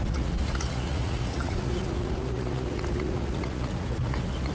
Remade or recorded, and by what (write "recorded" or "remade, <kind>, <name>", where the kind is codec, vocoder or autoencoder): remade, vocoder, Vocos